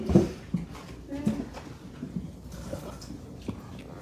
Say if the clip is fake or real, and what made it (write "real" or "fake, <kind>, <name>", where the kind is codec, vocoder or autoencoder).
real